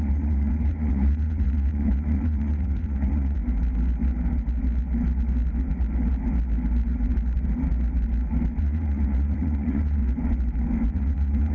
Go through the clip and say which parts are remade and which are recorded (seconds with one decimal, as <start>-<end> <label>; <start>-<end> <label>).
0.0-3.4 remade; 3.4-8.6 recorded; 8.6-10.0 remade; 10.0-10.9 recorded; 10.9-11.5 remade